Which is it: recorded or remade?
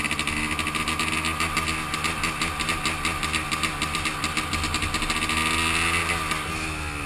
recorded